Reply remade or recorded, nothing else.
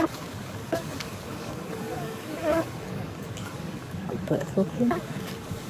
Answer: remade